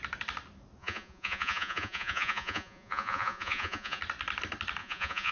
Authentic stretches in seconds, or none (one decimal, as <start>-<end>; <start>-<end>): 0.0-0.8; 4.0-4.8